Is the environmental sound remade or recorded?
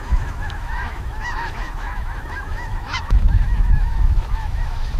remade